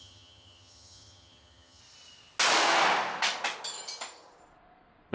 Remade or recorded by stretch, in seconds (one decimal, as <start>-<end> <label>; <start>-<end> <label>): 0.0-1.8 remade; 1.8-5.1 recorded